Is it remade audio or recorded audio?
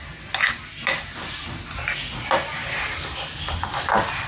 recorded